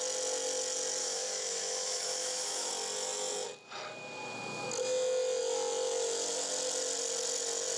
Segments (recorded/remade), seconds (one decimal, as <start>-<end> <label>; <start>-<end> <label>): 0.0-1.0 recorded; 1.0-2.7 remade; 2.7-7.8 recorded